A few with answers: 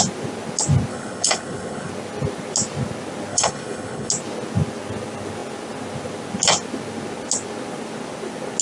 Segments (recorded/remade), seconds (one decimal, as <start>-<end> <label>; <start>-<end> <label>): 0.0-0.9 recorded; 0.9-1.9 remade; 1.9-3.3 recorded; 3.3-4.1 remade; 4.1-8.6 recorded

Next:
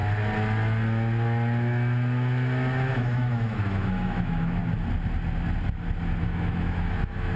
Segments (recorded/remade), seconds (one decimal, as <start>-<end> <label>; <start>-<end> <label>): 0.0-2.9 recorded; 2.9-4.6 remade; 4.6-6.2 recorded; 6.2-7.4 remade

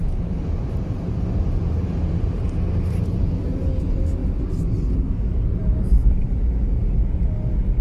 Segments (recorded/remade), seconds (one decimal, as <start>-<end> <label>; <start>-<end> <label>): 0.0-7.8 recorded